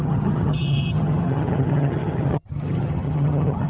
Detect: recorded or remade remade